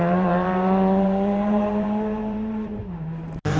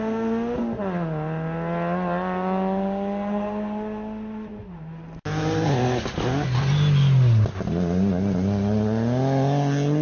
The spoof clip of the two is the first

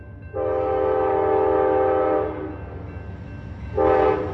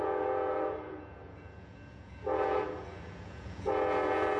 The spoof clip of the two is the second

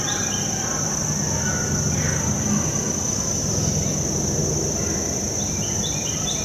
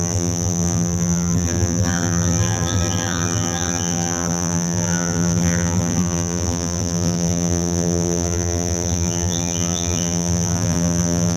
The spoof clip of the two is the second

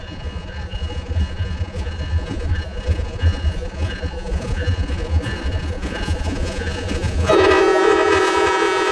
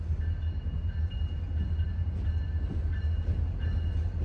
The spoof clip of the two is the first